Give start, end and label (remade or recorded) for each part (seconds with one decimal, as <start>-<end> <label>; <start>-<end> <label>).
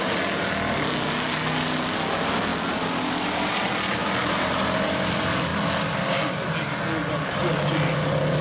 0.0-8.4 recorded